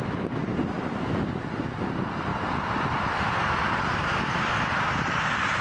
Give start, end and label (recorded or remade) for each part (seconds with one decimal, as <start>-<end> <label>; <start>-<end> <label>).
0.0-5.6 recorded